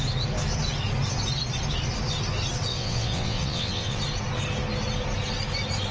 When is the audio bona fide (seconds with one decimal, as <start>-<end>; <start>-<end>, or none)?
0.0-2.7; 4.0-5.9